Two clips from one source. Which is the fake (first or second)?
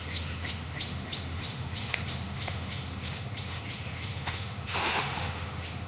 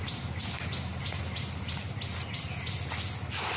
first